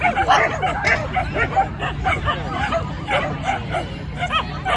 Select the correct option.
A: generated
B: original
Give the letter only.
B